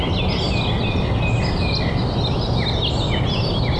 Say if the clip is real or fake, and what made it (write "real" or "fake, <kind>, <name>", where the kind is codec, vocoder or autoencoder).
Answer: real